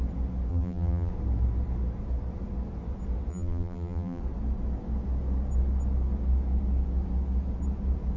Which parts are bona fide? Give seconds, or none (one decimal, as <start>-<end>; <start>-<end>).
0.0-0.5; 1.1-3.3; 4.2-8.2